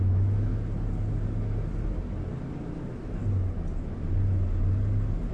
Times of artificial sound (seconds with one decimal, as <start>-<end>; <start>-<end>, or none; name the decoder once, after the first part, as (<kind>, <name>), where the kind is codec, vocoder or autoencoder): 0.0-0.5 (autoencoder, DAC-VAE); 2.6-3.2